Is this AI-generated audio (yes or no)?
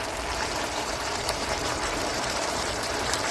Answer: yes